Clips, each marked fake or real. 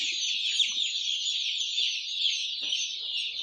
real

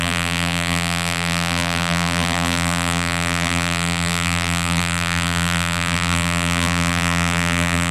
fake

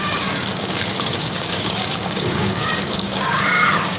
fake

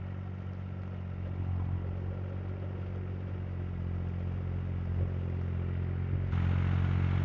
real